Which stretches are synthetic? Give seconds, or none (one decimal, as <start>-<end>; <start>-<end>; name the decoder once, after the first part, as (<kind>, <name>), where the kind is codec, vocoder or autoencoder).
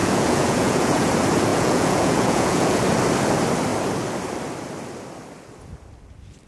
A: 0.0-1.1 (vocoder, Vocos); 1.5-2.8